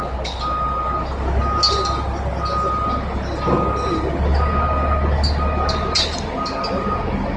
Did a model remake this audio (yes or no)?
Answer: no